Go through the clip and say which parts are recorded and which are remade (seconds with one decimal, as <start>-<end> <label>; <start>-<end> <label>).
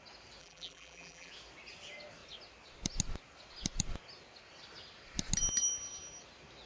0.0-0.4 recorded; 0.4-1.3 remade; 1.3-6.7 recorded